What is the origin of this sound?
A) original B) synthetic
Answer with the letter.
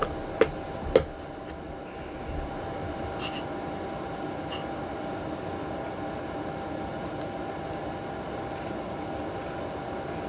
A